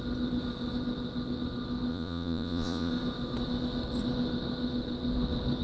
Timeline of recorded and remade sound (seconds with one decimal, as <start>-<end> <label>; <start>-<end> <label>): 0.0-1.9 recorded; 1.9-2.9 remade; 2.9-5.6 recorded